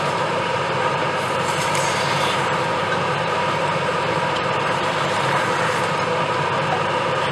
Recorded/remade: remade